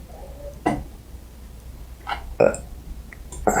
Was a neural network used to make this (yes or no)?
no